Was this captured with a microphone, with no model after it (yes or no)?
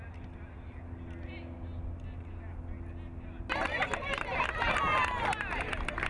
yes